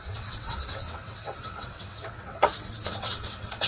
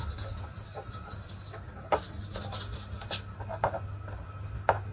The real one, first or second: second